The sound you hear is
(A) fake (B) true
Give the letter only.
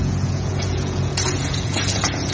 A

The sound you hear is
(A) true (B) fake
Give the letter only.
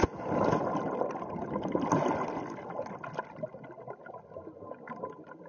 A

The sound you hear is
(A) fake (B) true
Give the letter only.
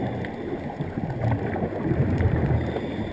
B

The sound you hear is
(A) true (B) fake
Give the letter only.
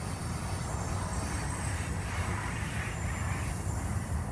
B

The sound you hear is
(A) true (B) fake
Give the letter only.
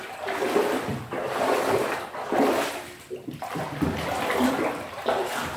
A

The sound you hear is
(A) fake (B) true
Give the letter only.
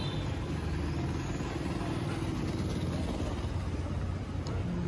B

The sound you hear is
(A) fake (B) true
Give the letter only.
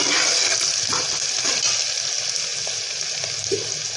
B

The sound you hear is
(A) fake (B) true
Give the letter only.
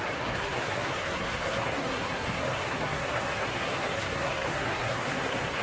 A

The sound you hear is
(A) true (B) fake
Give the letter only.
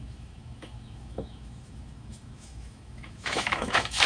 B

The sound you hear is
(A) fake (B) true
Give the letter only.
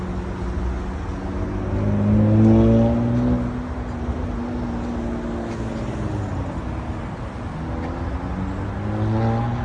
B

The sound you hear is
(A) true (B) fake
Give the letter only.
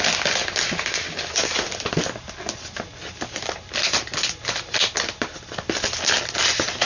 A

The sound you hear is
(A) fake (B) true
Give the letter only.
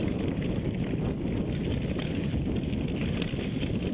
B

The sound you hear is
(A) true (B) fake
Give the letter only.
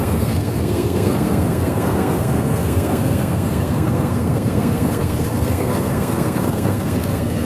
B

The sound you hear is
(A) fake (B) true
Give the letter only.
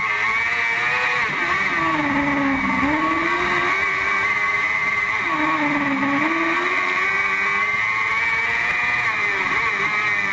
B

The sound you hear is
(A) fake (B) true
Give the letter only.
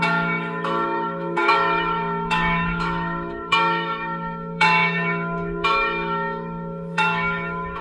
A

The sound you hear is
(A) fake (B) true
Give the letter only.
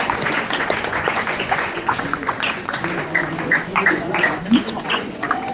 A